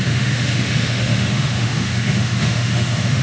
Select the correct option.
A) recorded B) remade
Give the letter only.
B